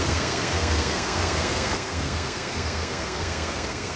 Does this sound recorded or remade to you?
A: remade